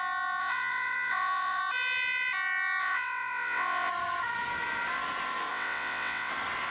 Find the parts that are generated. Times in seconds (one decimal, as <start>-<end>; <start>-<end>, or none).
0.4-1.6; 2.8-3.9; 5.5-6.3